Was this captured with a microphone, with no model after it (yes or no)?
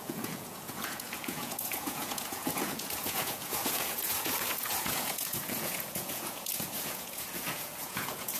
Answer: no